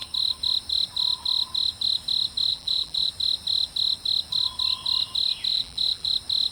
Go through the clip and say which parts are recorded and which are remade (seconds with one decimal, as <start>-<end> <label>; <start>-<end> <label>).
0.0-2.5 recorded; 2.5-3.1 remade; 3.1-5.5 recorded; 5.5-6.1 remade; 6.1-6.5 recorded